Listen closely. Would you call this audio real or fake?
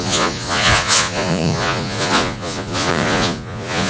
fake